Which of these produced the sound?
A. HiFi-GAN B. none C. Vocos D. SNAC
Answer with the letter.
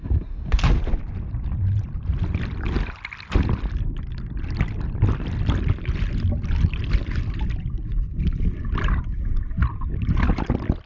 B